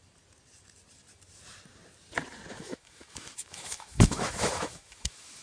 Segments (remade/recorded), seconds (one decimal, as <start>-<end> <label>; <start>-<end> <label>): 0.0-2.5 recorded; 2.5-5.4 remade

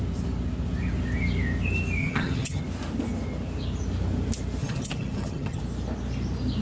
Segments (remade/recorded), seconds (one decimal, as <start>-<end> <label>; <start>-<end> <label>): 0.0-2.0 recorded; 2.0-2.6 remade; 2.6-4.6 recorded; 4.6-5.6 remade; 5.6-6.6 recorded

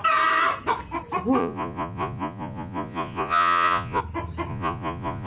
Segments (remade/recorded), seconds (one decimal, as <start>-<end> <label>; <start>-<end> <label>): 0.0-1.4 recorded; 1.4-4.0 remade; 4.0-4.5 recorded; 4.5-5.3 remade

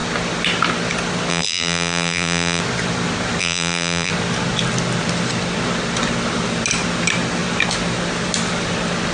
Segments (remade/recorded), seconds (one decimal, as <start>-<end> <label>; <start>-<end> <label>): 0.0-1.3 recorded; 1.3-2.6 remade; 2.6-3.4 recorded; 3.4-4.1 remade; 4.1-9.1 recorded

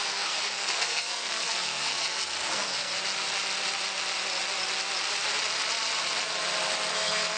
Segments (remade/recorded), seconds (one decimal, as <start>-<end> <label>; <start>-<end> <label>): 0.0-2.9 remade; 2.9-6.9 recorded; 6.9-7.4 remade

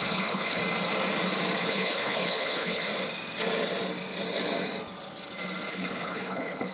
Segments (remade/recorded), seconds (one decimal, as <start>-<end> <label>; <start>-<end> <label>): 0.0-0.6 remade; 0.6-1.6 recorded; 1.6-2.9 remade; 2.9-5.7 recorded; 5.7-6.7 remade

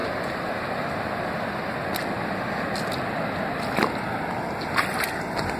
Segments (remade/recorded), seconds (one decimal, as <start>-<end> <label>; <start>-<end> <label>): 0.0-5.6 recorded